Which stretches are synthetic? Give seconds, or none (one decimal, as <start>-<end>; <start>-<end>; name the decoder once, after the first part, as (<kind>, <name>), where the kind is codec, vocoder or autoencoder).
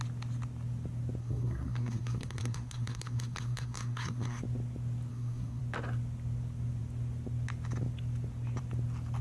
1.2-4.4 (codec, SNAC); 5.1-5.6